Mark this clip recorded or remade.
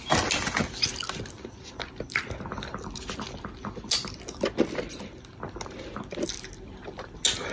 recorded